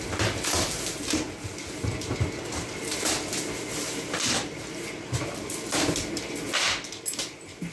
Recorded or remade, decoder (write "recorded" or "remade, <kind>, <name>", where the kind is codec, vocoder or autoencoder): recorded